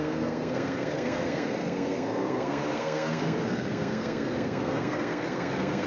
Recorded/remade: remade